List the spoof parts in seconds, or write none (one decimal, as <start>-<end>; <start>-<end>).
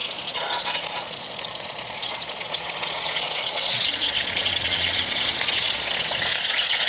0.0-6.9